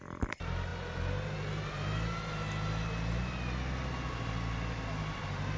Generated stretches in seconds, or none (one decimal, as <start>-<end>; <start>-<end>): none